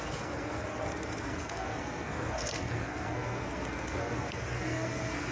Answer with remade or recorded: remade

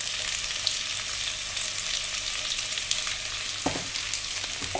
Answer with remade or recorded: recorded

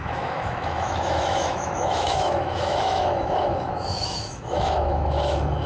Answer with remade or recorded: remade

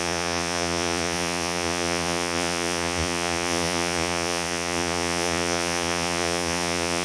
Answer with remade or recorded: remade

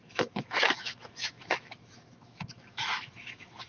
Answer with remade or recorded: remade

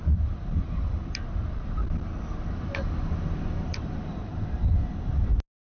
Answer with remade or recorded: recorded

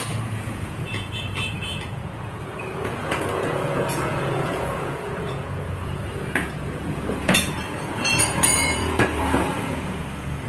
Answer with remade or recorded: remade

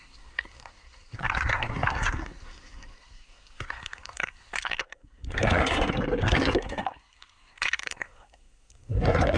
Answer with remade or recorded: remade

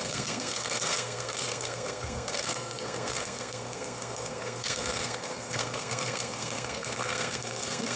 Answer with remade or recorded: remade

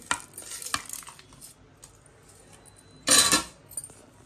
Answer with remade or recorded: recorded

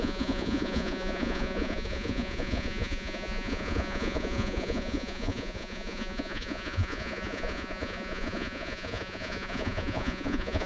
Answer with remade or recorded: remade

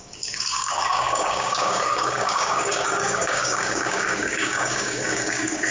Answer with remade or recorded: remade